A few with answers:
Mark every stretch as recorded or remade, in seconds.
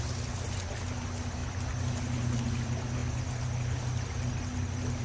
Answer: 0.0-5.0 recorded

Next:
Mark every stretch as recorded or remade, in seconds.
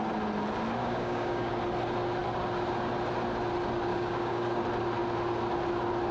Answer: 0.0-0.8 recorded; 0.8-1.5 remade; 1.5-3.9 recorded; 3.9-4.6 remade; 4.6-6.1 recorded